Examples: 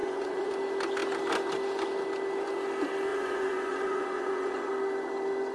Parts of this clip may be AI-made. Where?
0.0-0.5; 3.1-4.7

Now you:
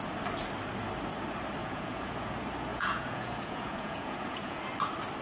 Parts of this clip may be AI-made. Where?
1.6-2.3; 2.7-4.6